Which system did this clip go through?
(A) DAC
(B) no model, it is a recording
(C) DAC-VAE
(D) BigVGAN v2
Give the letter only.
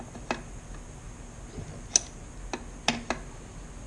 B